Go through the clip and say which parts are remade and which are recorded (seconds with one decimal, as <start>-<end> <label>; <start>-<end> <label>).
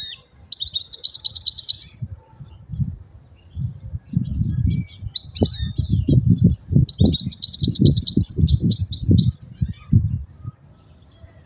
0.0-11.5 recorded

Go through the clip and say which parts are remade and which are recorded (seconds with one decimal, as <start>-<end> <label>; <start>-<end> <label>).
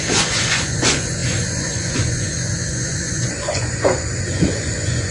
0.0-5.1 remade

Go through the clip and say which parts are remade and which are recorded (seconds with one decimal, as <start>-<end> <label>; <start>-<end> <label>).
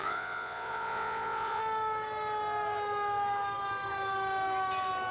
0.0-1.6 remade; 1.6-5.1 recorded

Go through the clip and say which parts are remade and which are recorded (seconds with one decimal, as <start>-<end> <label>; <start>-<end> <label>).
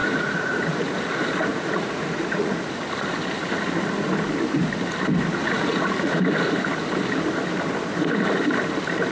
0.0-1.0 remade; 1.0-1.5 recorded; 1.5-2.5 remade; 2.5-5.4 recorded; 5.4-6.2 remade; 6.2-9.1 recorded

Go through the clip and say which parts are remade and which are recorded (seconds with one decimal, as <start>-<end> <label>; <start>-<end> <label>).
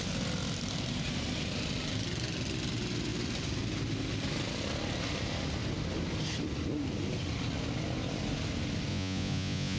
0.0-8.9 recorded; 8.9-9.8 remade